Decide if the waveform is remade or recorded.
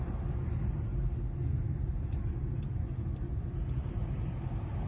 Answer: recorded